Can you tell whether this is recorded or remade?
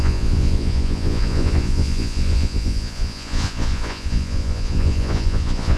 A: remade